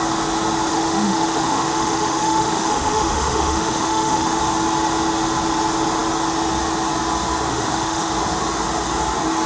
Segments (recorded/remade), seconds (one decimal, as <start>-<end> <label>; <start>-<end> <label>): 0.0-0.7 recorded; 0.7-4.4 remade; 4.4-7.5 recorded; 7.5-8.1 remade; 8.1-9.5 recorded